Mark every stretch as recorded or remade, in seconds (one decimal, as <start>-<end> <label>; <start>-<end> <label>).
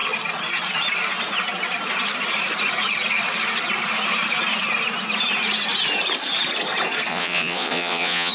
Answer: 0.0-7.1 recorded; 7.1-8.3 remade